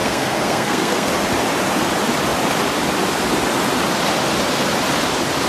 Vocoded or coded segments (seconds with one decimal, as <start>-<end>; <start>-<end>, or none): 0.0-1.1